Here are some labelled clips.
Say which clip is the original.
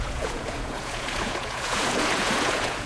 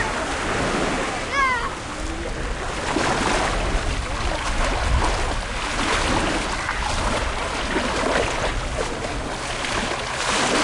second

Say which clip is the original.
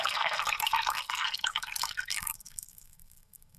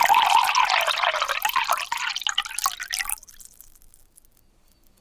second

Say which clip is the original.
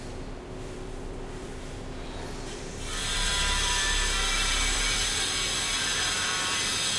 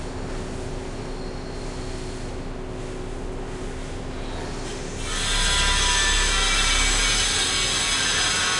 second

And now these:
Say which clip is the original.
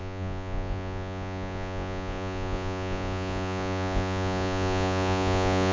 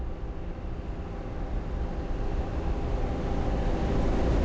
second